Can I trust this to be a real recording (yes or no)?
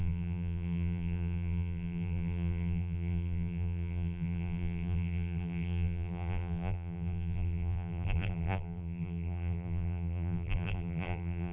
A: no